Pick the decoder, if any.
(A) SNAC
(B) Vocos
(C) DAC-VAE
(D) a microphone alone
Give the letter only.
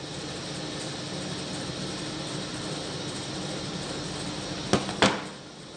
D